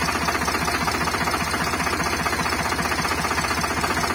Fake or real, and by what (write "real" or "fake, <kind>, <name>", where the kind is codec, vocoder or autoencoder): real